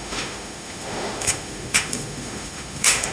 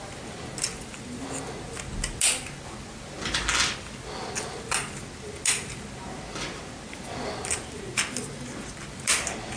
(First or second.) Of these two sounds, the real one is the second